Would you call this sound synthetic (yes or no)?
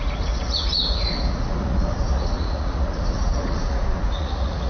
yes